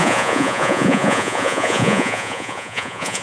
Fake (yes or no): yes